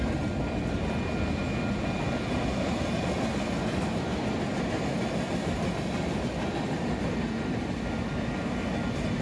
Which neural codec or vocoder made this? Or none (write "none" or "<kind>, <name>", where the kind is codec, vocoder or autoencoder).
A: none